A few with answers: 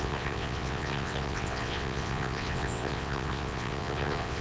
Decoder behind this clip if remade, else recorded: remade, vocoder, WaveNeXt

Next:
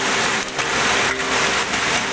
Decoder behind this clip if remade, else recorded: recorded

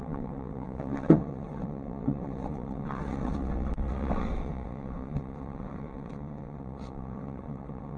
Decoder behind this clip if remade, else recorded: remade, vocoder, WaveNeXt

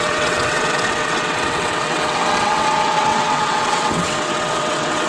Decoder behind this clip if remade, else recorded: remade, vocoder, WaveNeXt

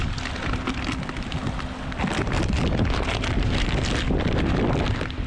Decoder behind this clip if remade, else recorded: recorded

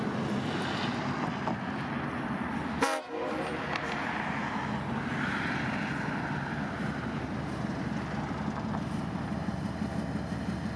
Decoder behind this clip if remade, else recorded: recorded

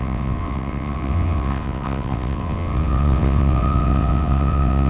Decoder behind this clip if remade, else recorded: remade, vocoder, WaveNeXt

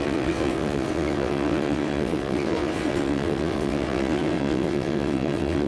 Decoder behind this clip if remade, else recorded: remade, vocoder, WaveNeXt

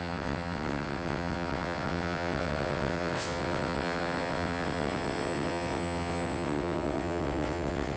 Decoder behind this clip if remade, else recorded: remade, vocoder, WaveNeXt